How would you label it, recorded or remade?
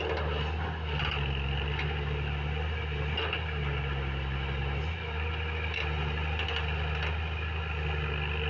recorded